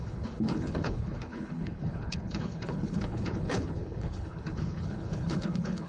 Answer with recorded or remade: remade